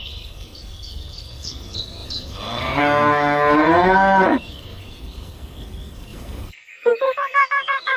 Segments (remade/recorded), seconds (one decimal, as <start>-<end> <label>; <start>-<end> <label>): 0.0-8.0 remade